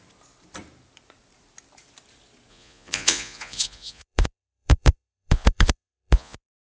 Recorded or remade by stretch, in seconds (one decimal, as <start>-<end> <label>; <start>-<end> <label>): 0.0-2.5 recorded; 2.5-6.7 remade